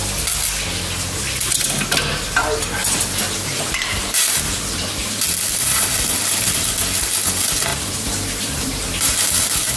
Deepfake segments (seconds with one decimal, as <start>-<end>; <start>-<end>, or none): 2.8-4.7; 7.7-9.4